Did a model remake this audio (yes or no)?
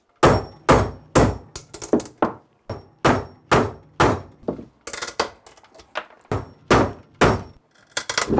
no